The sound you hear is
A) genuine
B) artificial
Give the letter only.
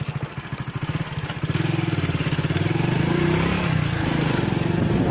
A